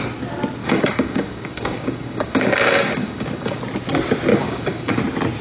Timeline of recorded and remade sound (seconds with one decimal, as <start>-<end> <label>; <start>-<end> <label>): 0.0-0.6 recorded; 0.6-3.6 remade; 3.6-4.3 recorded; 4.3-5.0 remade; 5.0-5.4 recorded